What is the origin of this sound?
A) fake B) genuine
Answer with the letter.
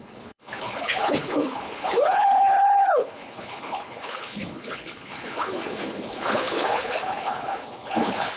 A